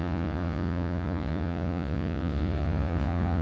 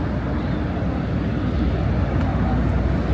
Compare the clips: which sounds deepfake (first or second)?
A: first